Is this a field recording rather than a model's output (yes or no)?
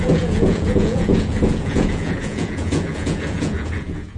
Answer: no